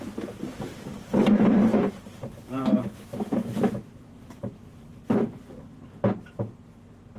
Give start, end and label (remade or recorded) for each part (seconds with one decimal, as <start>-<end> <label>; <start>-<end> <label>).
0.0-1.7 recorded; 1.7-6.0 remade; 6.0-7.2 recorded